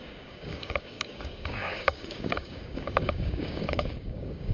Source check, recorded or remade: remade